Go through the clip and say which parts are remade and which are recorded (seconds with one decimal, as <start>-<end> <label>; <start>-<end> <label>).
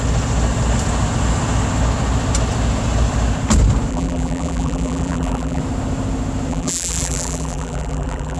0.0-3.9 recorded; 3.9-5.6 remade; 5.6-6.5 recorded; 6.5-8.4 remade